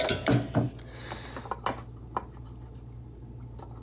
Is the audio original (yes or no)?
yes